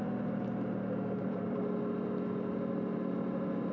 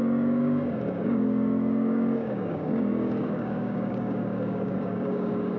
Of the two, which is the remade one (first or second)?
second